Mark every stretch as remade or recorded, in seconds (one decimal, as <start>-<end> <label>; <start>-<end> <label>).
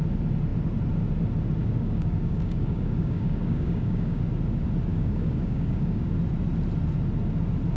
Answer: 0.0-1.6 recorded; 1.6-4.2 remade; 4.2-4.9 recorded; 4.9-6.1 remade; 6.1-7.8 recorded